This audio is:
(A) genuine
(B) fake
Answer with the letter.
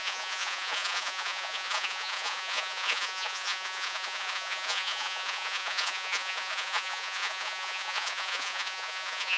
B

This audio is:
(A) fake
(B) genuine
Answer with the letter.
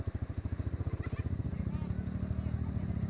B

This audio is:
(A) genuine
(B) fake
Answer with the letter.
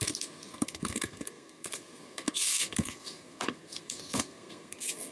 B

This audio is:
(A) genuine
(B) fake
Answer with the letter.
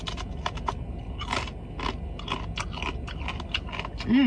A